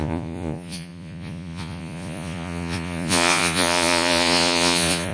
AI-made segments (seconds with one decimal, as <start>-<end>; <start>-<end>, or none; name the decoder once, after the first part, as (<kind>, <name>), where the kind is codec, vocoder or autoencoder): 0.0-5.1 (vocoder, Vocos)